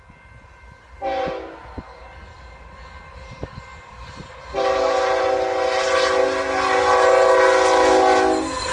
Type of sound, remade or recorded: recorded